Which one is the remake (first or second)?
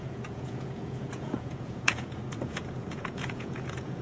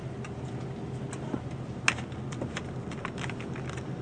first